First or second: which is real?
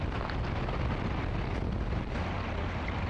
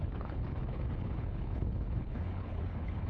first